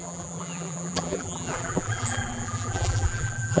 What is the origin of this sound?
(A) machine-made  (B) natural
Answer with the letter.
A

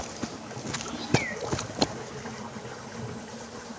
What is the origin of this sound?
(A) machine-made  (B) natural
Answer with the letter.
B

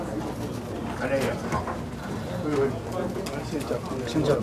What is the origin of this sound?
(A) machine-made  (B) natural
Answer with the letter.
B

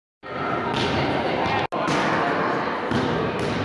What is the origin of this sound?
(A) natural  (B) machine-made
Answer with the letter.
A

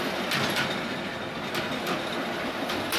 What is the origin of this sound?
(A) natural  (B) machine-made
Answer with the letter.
A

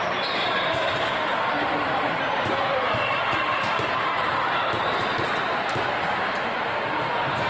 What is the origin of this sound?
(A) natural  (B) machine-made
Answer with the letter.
B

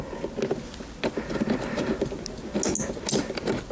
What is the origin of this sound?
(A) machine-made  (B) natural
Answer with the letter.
B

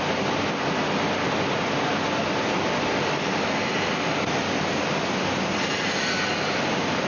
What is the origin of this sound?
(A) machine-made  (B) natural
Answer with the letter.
B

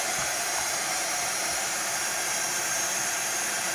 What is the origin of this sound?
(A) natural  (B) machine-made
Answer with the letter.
B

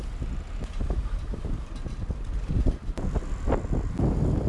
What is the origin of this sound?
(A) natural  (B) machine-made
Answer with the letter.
A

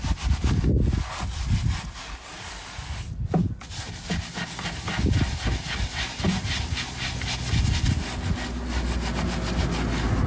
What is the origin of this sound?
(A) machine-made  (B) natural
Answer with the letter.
B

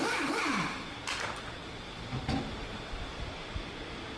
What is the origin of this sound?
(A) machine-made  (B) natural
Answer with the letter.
A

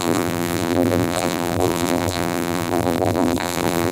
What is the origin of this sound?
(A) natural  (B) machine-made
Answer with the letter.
B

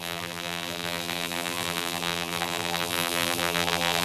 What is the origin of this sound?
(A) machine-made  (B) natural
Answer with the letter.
A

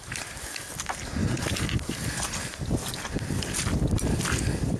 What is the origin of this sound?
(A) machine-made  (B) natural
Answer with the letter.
B